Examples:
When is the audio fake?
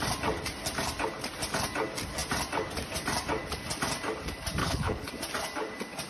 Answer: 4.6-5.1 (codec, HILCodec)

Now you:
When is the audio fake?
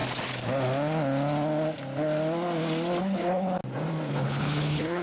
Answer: 3.0-3.6 (codec, HILCodec); 4.1-5.0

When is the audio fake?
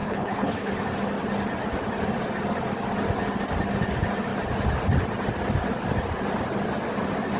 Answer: 0.0-0.7 (codec, HILCodec)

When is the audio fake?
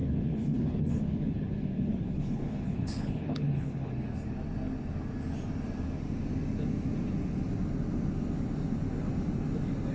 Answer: 0.0-3.9 (codec, HILCodec)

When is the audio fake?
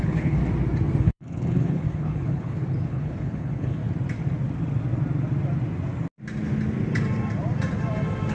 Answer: 0.0-0.4 (codec, HILCodec); 1.0-3.8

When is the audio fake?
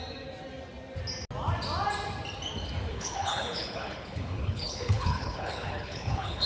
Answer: 2.9-6.5 (codec, HILCodec)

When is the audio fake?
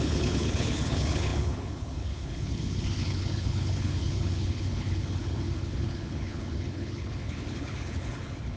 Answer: 0.0-8.6 (codec, HILCodec)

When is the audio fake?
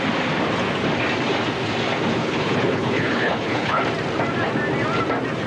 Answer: 2.2-3.8 (codec, HILCodec)